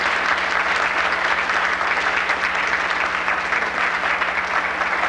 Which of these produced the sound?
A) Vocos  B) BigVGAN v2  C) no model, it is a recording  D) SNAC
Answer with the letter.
C